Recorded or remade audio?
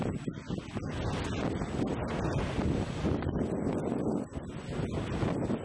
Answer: recorded